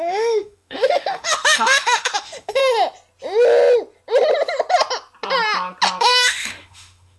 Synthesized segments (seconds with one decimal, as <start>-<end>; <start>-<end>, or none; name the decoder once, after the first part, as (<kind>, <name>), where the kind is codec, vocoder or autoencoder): 0.0-2.6 (autoencoder, DAC-VAE); 6.0-7.2